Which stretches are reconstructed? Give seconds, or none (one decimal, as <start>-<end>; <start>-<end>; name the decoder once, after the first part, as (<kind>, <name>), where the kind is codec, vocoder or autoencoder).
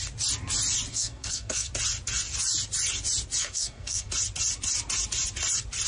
0.9-1.7 (codec, SNAC); 3.4-4.1